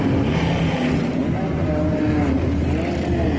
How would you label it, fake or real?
real